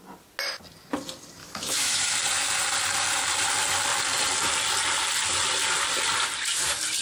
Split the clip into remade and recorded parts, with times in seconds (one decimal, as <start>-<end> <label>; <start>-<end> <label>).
0.0-1.4 recorded; 1.4-2.1 remade; 2.1-7.0 recorded